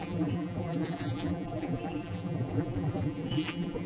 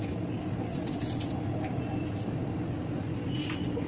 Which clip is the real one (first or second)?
second